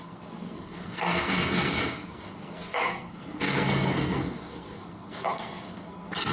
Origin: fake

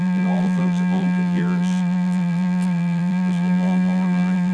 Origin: fake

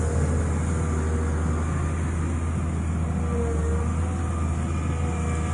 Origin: real